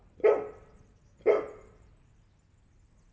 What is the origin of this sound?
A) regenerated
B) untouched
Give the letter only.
B